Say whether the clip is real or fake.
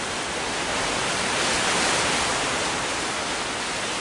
real